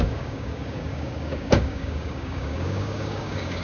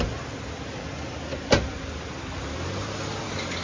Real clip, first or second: second